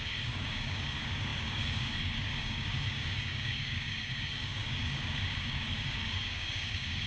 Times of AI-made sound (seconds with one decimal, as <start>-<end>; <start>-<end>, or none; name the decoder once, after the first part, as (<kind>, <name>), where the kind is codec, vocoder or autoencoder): 0.0-7.1 (codec, DAC)